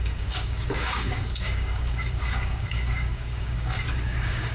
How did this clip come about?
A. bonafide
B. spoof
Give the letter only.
B